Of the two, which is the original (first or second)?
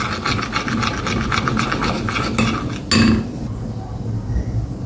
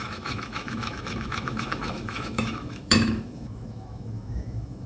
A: first